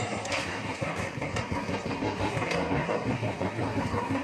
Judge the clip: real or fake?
fake